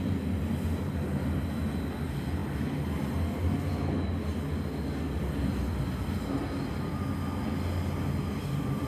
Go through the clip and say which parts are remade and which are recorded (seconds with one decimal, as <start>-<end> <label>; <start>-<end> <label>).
0.0-8.9 recorded

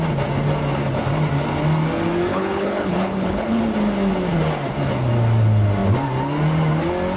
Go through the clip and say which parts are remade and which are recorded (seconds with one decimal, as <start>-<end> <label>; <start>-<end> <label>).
0.0-2.3 recorded; 2.3-3.6 remade; 3.6-7.2 recorded

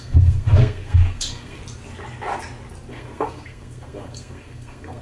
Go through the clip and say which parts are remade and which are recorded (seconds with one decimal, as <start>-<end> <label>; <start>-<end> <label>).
0.0-1.6 remade; 1.6-2.9 recorded; 2.9-5.0 remade

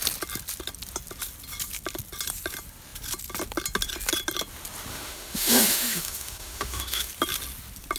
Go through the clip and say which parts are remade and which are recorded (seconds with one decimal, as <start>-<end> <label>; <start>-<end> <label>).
0.0-4.9 recorded; 4.9-7.1 remade; 7.1-8.0 recorded

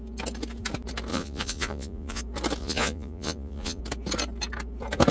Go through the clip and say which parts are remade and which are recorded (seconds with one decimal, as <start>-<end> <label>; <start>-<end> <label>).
0.0-1.1 recorded; 1.1-2.2 remade; 2.2-2.6 recorded; 2.6-3.8 remade; 3.8-5.1 recorded

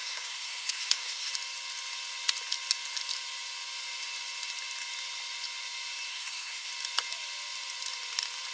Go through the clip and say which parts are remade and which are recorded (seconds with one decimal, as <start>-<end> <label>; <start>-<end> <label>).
0.0-1.3 remade; 1.3-6.1 recorded; 6.1-6.7 remade; 6.7-8.5 recorded

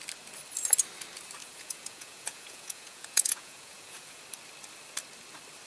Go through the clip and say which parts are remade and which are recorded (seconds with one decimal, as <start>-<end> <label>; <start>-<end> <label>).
0.0-1.4 recorded; 1.4-4.2 remade; 4.2-5.7 recorded

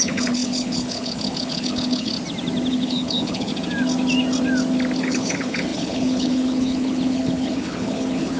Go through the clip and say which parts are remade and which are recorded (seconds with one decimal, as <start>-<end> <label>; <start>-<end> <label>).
0.0-2.1 remade; 2.1-2.7 recorded; 2.7-3.5 remade; 3.5-5.0 recorded; 5.0-8.4 remade